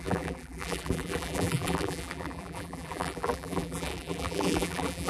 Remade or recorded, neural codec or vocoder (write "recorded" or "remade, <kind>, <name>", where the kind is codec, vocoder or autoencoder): remade, vocoder, BigVGAN v2